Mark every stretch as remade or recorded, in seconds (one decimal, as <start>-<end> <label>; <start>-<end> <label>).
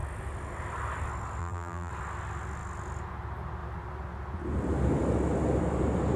0.0-1.4 recorded; 1.4-1.9 remade; 1.9-6.2 recorded